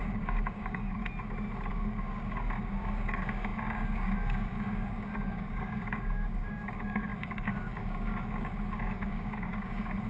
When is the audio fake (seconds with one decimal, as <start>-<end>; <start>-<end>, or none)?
0.0-1.0; 1.7-10.1